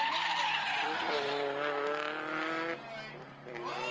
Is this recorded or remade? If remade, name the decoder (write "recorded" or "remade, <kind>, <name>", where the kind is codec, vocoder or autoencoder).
recorded